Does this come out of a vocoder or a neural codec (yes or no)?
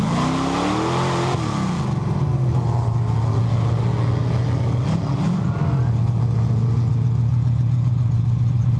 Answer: no